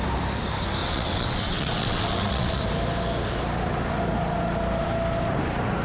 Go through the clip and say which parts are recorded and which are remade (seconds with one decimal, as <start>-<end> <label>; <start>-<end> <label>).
0.0-0.8 recorded; 0.8-2.6 remade; 2.6-5.8 recorded